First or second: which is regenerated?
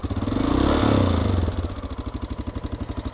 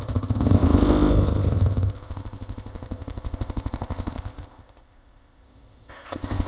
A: second